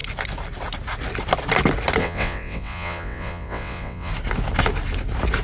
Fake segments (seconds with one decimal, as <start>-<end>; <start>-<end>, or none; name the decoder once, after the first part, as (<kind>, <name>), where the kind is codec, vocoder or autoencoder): 2.0-4.1 (vocoder, WaveNeXt)